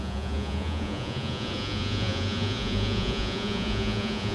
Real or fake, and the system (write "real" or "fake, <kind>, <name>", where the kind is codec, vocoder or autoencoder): fake, vocoder, Vocos